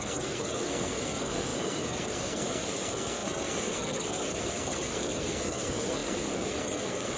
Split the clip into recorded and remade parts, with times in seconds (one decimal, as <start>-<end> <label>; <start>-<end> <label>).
0.0-7.2 remade